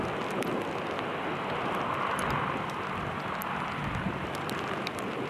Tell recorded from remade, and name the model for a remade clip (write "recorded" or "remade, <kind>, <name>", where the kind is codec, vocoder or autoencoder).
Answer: recorded